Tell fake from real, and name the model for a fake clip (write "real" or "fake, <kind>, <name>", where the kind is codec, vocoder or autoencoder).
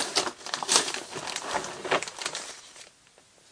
real